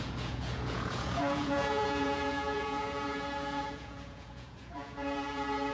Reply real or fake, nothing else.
fake